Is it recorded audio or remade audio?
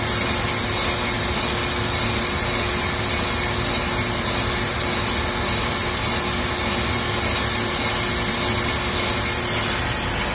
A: recorded